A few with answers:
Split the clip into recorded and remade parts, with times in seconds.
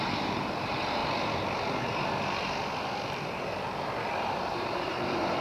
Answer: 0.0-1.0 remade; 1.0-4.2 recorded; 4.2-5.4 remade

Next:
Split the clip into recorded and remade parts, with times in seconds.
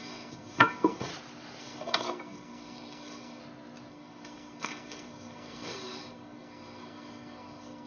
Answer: 0.0-1.1 remade; 1.1-1.6 recorded; 1.6-3.4 remade; 3.4-3.9 recorded; 3.9-7.9 remade